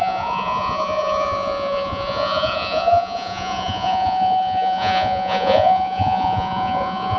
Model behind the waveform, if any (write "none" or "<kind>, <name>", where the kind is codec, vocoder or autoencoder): vocoder, Vocos